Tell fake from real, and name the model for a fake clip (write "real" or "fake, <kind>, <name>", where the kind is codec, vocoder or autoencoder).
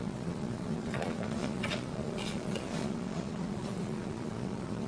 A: fake, vocoder, Vocos